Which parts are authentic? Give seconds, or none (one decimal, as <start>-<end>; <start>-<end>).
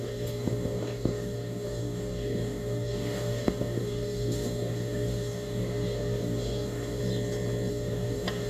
7.0-7.7